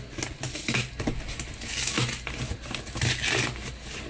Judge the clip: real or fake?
real